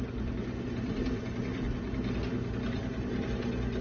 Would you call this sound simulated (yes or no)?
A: no